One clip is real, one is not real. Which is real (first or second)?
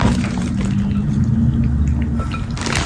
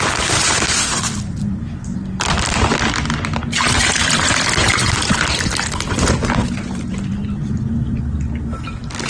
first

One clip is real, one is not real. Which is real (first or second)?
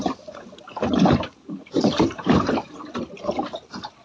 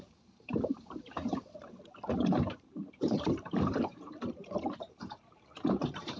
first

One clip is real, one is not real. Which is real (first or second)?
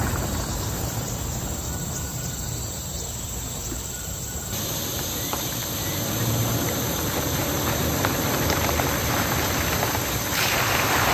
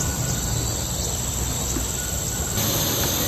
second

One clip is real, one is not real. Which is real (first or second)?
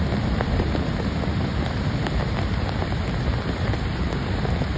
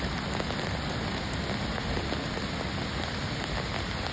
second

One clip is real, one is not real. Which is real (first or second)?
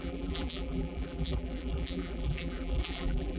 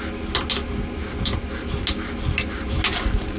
second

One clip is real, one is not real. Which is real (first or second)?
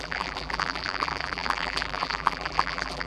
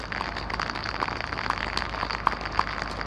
second